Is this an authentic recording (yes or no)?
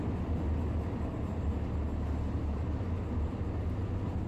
yes